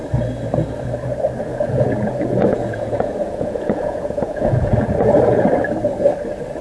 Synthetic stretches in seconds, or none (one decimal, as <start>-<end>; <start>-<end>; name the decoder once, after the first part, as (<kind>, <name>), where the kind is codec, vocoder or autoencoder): 1.5-5.5 (vocoder, Vocos)

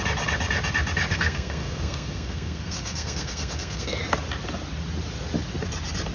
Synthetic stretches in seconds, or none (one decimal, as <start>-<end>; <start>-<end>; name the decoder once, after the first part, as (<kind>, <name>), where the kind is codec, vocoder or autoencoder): 1.1-4.0 (codec, SNAC)

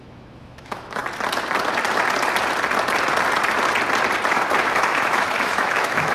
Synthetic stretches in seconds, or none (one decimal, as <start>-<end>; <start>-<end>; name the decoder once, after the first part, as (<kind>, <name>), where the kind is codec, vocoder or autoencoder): 0.0-1.0 (autoencoder, DAC-VAE); 4.3-6.1

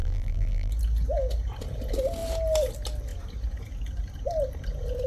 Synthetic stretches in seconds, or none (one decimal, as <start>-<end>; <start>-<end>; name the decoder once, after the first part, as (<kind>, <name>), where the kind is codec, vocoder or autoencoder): 0.0-0.7 (vocoder, BigVGAN v2)

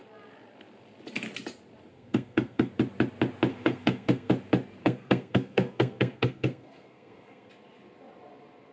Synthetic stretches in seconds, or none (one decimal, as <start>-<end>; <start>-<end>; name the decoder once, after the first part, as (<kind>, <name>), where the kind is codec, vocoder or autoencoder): 1.9-2.7 (codec, SNAC); 3.5-4.3; 4.8-7.5

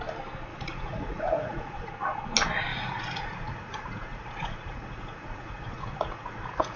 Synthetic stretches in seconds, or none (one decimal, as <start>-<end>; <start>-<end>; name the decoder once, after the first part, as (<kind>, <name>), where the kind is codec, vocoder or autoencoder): 0.5-1.9 (vocoder, Vocos); 2.7-6.8